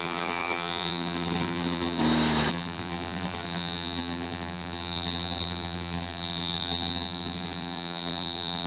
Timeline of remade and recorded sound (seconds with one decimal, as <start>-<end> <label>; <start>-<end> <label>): 0.0-2.0 remade; 2.0-2.5 recorded; 2.5-8.7 remade